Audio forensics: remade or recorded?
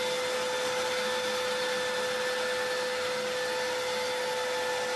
recorded